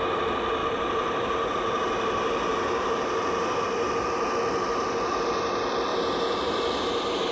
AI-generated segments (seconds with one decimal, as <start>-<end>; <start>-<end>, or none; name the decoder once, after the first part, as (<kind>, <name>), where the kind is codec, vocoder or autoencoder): 0.6-3.6 (vocoder, BigVGAN v2); 5.9-7.3